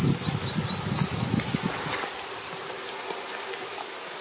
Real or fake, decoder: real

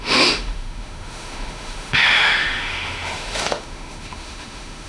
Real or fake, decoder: fake, autoencoder, DAC-VAE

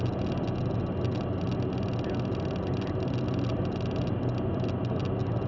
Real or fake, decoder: real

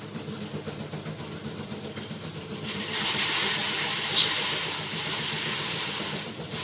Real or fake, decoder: fake, vocoder, BigVGAN v2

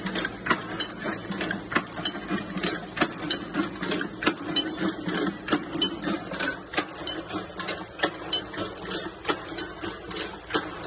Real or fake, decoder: real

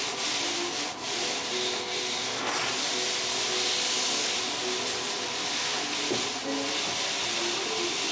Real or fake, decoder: real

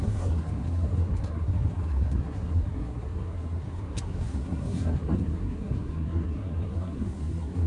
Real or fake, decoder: fake, codec, SNAC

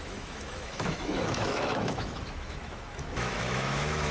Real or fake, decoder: fake, autoencoder, DAC-VAE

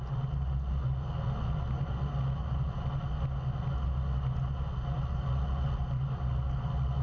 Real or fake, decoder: real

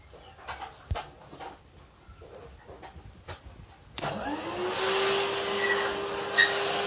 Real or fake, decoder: real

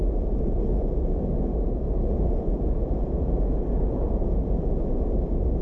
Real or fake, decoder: fake, vocoder, Vocos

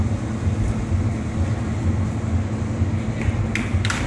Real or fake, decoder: real